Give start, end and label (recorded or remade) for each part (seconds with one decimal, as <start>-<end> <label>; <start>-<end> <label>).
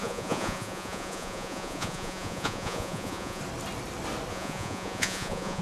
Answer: 0.0-3.4 remade; 3.4-4.3 recorded; 4.3-5.6 remade